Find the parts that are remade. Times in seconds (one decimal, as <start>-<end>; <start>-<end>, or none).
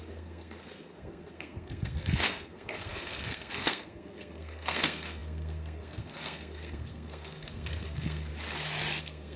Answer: 0.0-8.3; 9.0-9.4